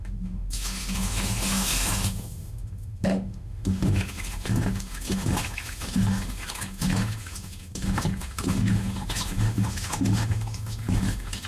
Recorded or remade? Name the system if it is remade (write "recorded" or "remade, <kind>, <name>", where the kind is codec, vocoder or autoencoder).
remade, autoencoder, DAC-VAE